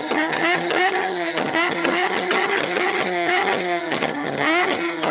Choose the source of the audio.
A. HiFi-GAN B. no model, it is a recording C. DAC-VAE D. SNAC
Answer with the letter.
A